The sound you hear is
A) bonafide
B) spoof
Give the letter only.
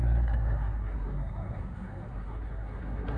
B